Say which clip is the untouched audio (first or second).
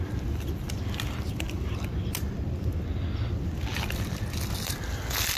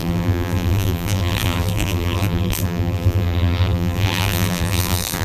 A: first